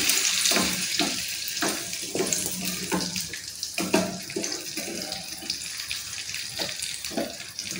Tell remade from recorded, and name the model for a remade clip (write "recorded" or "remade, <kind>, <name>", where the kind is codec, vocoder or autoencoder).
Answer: remade, vocoder, BigVGAN v2